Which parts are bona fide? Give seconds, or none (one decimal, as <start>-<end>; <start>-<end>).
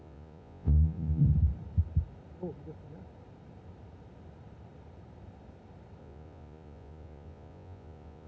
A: 1.2-6.0